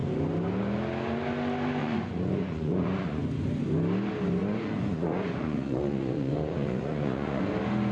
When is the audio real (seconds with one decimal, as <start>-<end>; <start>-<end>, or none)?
0.0-1.8; 3.2-4.4; 7.5-7.9